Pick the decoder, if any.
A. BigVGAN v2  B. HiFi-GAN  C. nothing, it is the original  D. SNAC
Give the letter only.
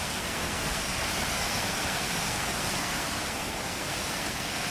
D